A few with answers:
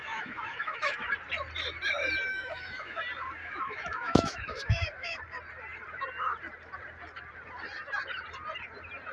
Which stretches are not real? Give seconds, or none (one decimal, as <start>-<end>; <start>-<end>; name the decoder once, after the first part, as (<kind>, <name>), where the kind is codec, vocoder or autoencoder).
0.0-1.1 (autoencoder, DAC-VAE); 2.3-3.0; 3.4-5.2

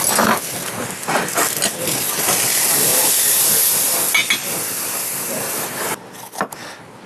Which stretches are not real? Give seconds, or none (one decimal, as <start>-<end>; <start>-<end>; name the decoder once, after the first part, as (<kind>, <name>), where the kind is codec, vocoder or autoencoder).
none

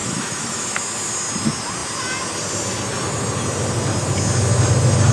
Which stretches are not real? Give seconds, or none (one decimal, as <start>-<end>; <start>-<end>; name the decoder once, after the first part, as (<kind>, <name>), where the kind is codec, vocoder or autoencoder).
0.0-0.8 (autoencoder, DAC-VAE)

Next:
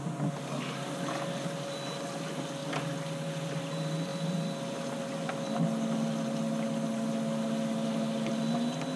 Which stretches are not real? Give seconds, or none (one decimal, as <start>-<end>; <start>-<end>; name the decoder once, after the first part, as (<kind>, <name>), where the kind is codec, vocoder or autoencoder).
none